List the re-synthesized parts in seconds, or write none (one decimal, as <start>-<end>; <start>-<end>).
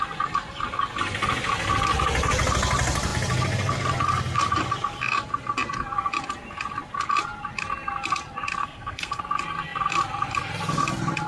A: 8.6-9.2